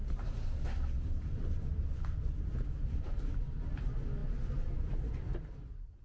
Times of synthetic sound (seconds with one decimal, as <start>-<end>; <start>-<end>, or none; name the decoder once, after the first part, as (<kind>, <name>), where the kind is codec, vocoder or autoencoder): none